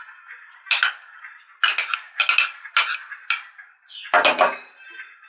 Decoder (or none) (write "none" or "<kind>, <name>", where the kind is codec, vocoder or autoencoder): none